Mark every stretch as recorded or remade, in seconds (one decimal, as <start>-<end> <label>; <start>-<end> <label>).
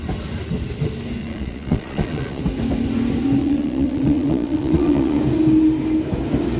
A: 0.0-1.2 recorded; 1.2-2.4 remade; 2.4-3.4 recorded; 3.4-5.2 remade; 5.2-6.6 recorded